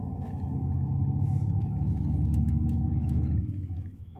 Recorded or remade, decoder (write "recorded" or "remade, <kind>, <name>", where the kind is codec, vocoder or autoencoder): remade, autoencoder, DAC-VAE